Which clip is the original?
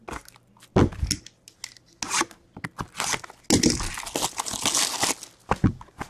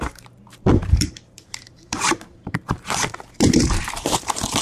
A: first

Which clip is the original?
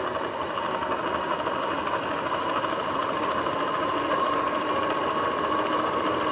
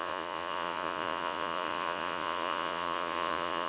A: first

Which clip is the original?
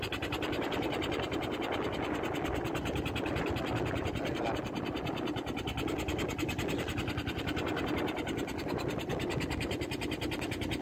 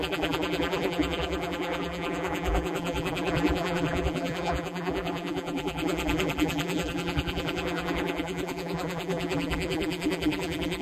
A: first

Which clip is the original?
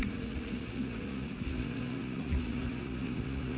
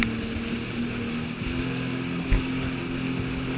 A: second